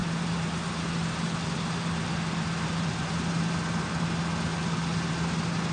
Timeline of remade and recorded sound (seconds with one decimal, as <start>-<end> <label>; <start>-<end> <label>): 0.0-5.7 recorded